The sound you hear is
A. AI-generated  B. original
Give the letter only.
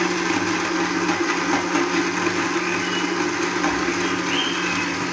B